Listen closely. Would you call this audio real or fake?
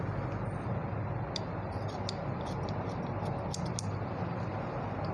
real